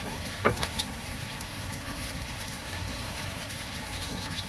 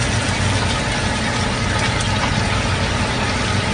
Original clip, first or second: second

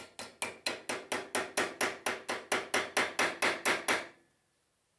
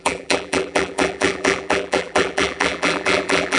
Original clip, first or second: first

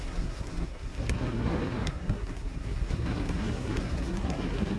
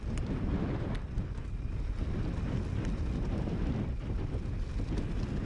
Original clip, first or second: second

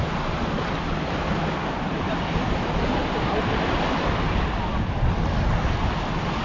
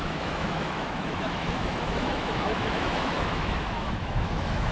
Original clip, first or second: first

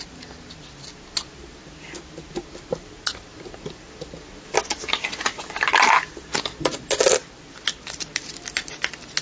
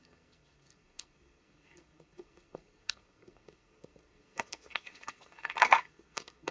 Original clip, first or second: first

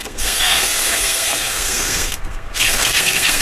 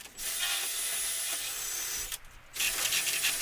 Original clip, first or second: second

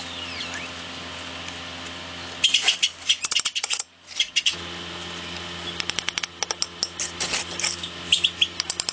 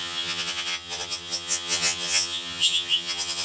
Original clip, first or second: first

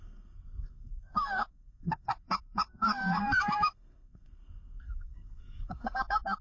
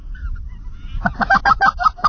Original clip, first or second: second